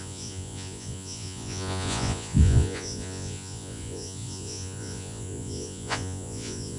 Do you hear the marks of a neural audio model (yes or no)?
yes